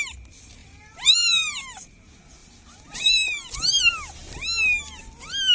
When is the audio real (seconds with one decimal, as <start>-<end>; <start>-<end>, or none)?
0.0-0.6; 2.0-2.4; 3.8-5.5